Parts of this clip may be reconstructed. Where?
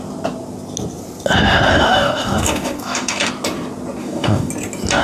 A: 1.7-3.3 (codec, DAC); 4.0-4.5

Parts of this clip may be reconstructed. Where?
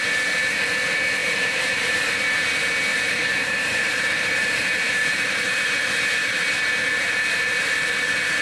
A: 1.2-2.1 (vocoder, BigVGAN v2); 2.9-6.4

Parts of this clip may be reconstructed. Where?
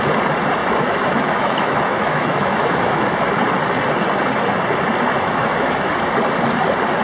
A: 0.6-3.4 (autoencoder, DAC-VAE); 5.1-5.9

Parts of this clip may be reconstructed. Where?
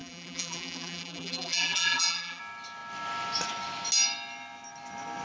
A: 0.0-2.4 (vocoder, BigVGAN v2)